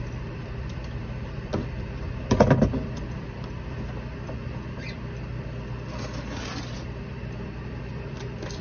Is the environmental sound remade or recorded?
remade